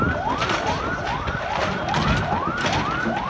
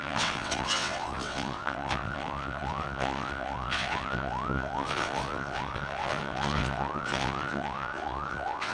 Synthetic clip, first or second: second